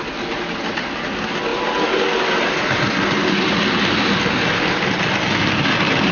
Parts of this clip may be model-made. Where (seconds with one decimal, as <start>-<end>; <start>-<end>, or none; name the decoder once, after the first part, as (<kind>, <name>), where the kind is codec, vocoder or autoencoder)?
none